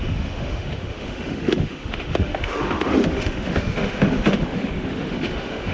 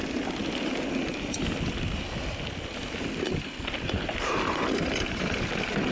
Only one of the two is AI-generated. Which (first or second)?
first